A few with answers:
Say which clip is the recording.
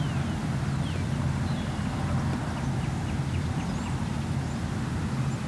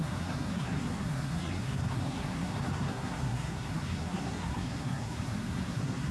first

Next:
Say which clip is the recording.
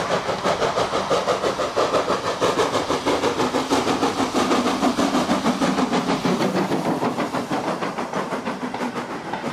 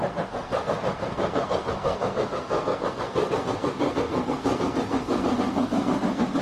first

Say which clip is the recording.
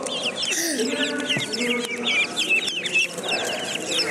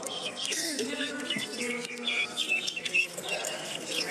first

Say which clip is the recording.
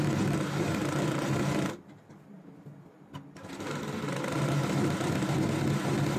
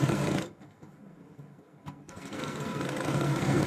first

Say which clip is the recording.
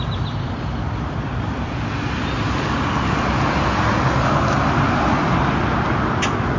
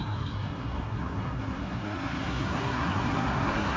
first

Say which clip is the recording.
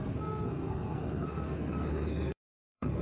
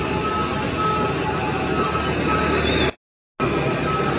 second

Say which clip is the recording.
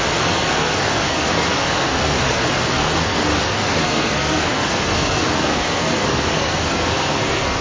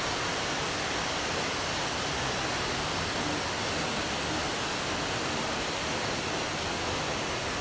second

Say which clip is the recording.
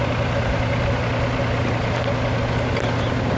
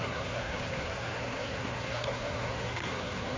first